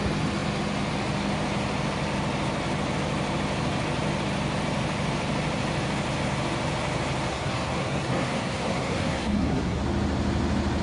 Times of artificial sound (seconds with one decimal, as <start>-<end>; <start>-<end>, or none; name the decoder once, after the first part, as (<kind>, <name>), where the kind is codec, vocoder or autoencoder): 7.3-9.8 (codec, SNAC)